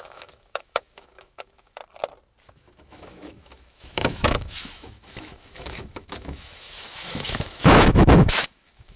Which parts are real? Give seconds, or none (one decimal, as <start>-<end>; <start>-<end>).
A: 1.8-2.5